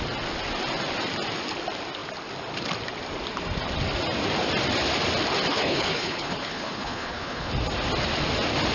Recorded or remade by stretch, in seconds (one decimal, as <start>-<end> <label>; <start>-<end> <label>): 0.0-5.5 recorded; 5.5-7.5 remade; 7.5-8.7 recorded